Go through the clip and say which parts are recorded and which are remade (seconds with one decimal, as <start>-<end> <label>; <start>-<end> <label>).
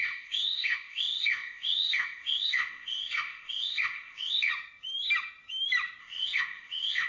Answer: 0.0-4.5 remade; 4.5-6.0 recorded; 6.0-7.1 remade